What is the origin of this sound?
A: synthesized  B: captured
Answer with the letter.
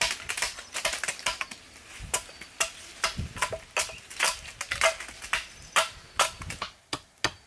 B